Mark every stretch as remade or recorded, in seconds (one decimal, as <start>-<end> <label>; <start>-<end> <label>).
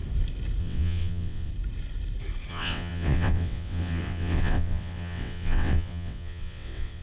0.0-0.6 recorded; 0.6-1.5 remade; 1.5-2.5 recorded; 2.5-7.0 remade